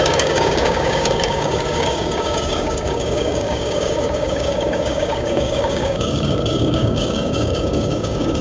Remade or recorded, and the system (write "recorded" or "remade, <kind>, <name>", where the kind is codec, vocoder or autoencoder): remade, codec, DAC